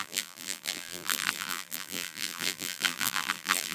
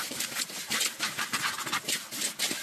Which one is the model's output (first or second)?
first